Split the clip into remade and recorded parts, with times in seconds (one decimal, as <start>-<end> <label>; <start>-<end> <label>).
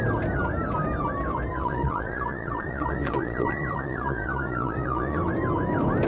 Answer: 0.0-1.5 recorded; 1.5-5.2 remade; 5.2-6.1 recorded